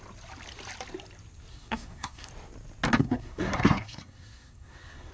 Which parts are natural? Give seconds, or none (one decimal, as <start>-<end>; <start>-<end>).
0.0-1.5; 2.3-3.0